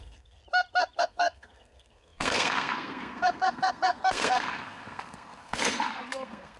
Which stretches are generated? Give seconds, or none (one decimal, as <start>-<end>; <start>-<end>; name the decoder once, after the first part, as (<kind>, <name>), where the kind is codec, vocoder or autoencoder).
0.0-0.4 (codec, SNAC); 1.0-6.6